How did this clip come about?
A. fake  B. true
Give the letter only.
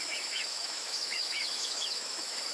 A